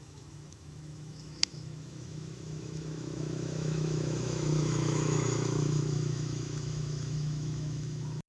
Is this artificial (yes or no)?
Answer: yes